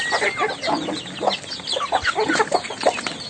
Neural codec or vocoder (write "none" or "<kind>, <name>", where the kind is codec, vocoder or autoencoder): none